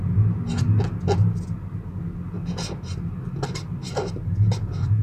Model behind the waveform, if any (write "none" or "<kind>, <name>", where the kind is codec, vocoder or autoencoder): none